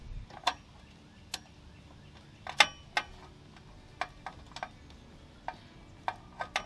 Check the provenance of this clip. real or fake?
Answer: real